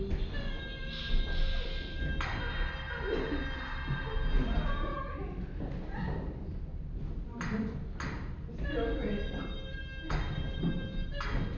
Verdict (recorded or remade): recorded